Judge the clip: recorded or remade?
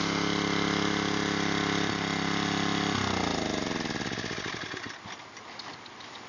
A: recorded